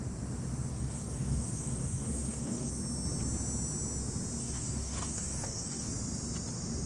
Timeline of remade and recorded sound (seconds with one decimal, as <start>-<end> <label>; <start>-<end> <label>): 0.0-0.7 recorded; 0.7-2.7 remade; 2.7-4.4 recorded; 4.4-5.9 remade; 5.9-6.9 recorded